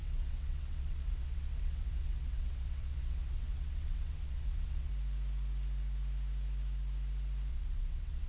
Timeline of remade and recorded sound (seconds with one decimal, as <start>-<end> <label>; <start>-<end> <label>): 0.0-4.9 remade; 4.9-7.5 recorded; 7.5-8.3 remade